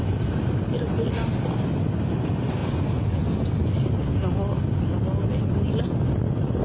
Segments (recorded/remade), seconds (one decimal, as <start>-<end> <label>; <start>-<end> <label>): 0.0-6.6 recorded